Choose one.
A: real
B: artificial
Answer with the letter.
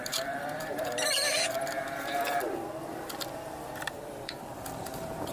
B